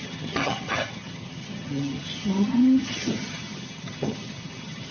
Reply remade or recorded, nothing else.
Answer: remade